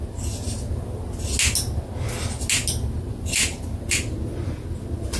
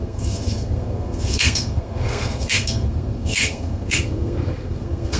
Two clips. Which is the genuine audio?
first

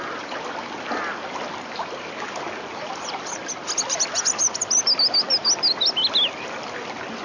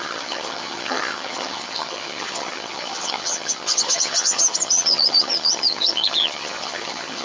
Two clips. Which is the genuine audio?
first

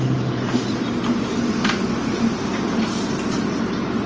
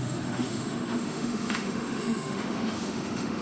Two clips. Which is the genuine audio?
first